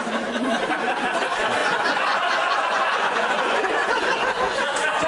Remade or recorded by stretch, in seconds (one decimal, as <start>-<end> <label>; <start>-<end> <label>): 0.0-1.6 recorded; 1.6-5.1 remade